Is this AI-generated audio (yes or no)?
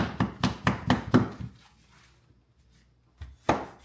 no